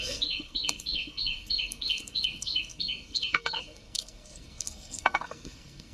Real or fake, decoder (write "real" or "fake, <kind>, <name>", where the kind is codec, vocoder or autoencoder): fake, codec, SNAC